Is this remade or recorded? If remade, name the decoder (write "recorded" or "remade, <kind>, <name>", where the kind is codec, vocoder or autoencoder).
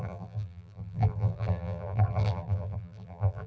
remade, vocoder, BigVGAN v2